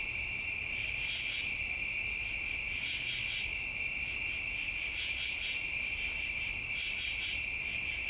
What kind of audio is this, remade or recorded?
recorded